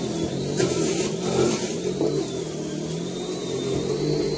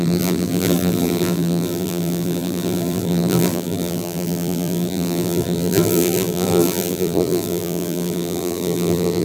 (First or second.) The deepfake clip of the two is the second